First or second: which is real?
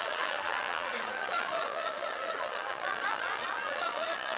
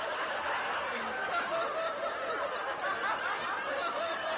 second